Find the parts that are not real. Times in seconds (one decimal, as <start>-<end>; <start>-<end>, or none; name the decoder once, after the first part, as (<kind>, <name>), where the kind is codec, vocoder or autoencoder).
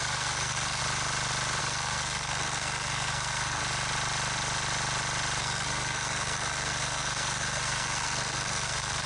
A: 0.0-0.8 (codec, SNAC); 1.6-3.6; 5.4-9.1